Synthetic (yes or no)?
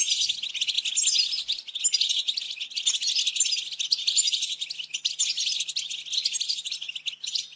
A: no